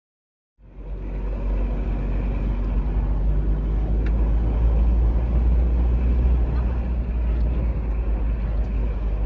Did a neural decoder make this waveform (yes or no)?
no